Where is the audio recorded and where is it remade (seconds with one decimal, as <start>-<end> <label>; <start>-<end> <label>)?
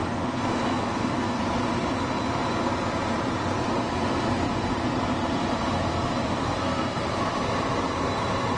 0.0-1.4 remade; 1.4-6.3 recorded; 6.3-7.1 remade; 7.1-8.6 recorded